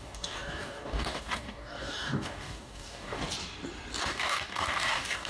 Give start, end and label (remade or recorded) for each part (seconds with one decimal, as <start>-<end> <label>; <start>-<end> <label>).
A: 0.0-3.2 remade; 3.2-4.0 recorded; 4.0-5.3 remade

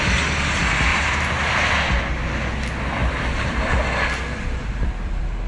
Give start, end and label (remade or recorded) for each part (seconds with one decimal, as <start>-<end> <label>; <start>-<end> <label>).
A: 0.0-0.9 recorded; 0.9-1.7 remade; 1.7-3.0 recorded; 3.0-3.7 remade; 3.7-5.5 recorded